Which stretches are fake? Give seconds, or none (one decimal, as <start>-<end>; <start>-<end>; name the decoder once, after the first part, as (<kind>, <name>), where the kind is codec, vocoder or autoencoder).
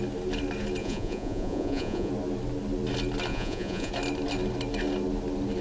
0.8-2.1 (vocoder, Vocos); 3.3-3.9